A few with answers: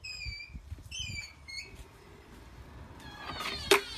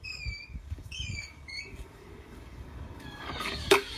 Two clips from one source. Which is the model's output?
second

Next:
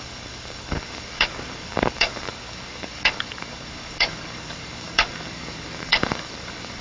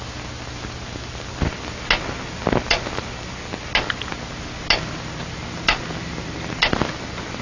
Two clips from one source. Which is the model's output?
first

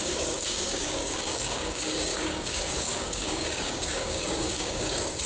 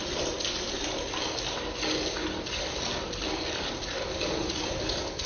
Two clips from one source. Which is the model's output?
first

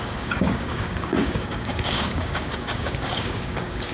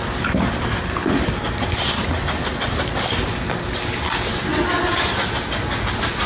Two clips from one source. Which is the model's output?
first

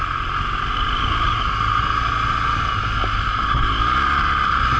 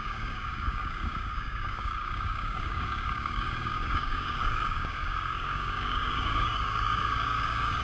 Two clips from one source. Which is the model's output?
second